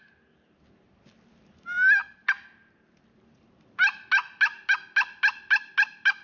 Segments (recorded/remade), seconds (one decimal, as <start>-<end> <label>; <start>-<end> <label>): 0.0-6.2 recorded